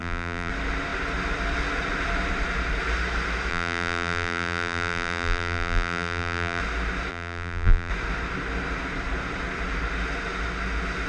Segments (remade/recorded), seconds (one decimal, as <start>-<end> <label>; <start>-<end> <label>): 0.0-0.5 remade; 0.5-3.5 recorded; 3.5-6.6 remade; 6.6-7.1 recorded; 7.1-7.9 remade; 7.9-11.1 recorded